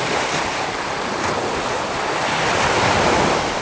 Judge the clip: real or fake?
real